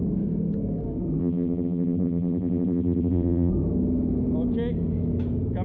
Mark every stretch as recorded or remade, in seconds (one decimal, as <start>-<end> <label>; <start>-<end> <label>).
0.0-1.2 recorded; 1.2-3.5 remade; 3.5-5.6 recorded